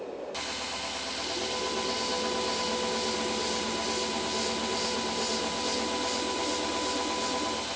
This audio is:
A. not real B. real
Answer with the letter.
B